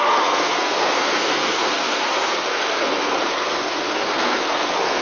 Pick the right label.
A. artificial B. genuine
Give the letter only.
A